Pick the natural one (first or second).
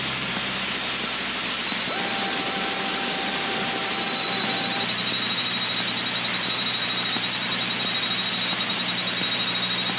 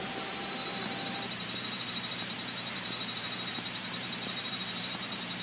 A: first